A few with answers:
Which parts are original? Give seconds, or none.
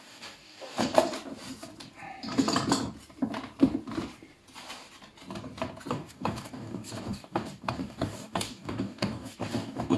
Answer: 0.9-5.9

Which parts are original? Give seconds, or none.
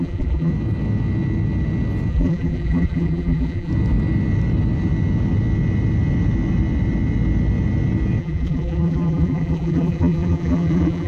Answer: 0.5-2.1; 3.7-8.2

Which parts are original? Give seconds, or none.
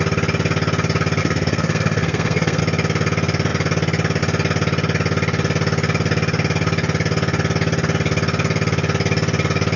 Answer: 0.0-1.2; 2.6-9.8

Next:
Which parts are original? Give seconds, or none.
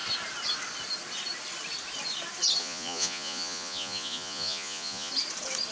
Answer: 0.0-2.6; 5.1-5.7